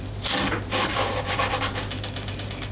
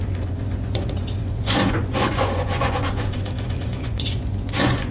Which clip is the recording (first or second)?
first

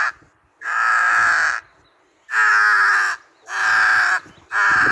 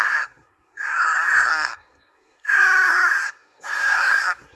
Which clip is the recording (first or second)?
first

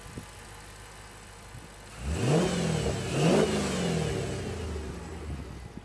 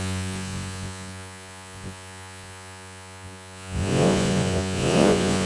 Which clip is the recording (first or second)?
first